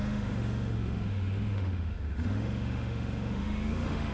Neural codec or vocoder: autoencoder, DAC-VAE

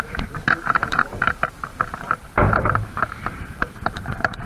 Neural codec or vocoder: vocoder, BigVGAN v2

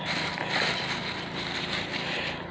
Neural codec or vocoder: none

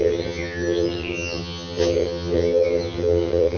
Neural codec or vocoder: vocoder, HiFi-GAN